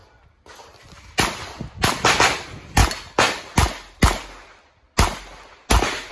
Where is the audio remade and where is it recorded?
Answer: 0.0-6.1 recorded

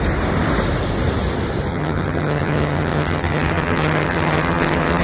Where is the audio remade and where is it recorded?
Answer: 0.0-1.7 recorded; 1.7-5.0 remade